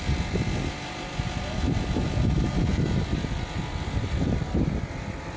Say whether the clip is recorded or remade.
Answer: remade